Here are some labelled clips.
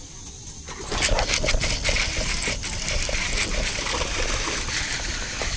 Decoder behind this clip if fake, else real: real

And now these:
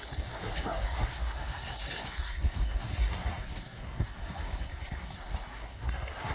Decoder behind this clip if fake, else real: fake, codec, SNAC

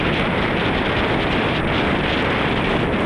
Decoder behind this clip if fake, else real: real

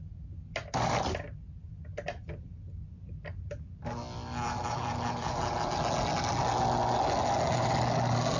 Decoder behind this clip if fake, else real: real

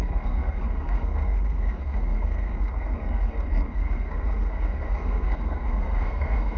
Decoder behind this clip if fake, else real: fake, codec, SNAC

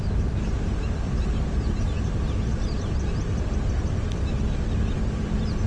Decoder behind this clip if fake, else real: real